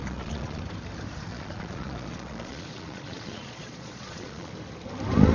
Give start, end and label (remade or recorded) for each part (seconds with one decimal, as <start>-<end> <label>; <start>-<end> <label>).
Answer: 0.0-0.6 remade; 0.6-1.3 recorded; 1.3-4.5 remade; 4.5-5.3 recorded